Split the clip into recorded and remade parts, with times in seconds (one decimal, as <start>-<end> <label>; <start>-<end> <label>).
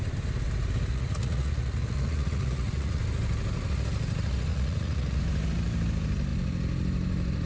0.0-0.9 recorded; 0.9-3.0 remade; 3.0-4.5 recorded; 4.5-5.2 remade; 5.2-7.5 recorded